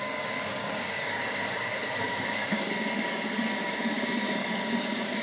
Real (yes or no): no